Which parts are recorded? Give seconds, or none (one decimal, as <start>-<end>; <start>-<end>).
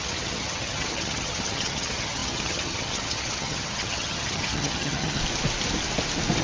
5.2-6.4